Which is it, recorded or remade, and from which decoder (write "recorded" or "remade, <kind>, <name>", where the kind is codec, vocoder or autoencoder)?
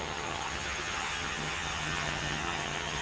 remade, vocoder, HiFi-GAN